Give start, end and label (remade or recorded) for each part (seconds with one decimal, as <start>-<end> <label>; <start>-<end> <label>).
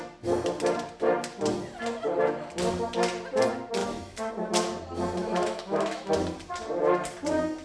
0.0-3.8 recorded; 3.8-4.3 remade; 4.3-5.2 recorded; 5.2-6.1 remade; 6.1-7.6 recorded